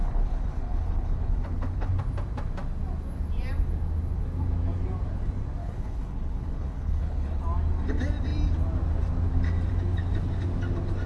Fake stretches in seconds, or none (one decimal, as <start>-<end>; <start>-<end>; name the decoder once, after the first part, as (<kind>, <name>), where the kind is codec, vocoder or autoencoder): 0.0-1.9 (codec, HILCodec); 5.6-7.4